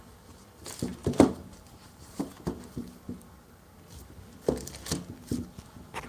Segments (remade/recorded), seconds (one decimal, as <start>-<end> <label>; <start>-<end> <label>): 0.0-0.9 recorded; 0.9-2.2 remade; 2.2-6.1 recorded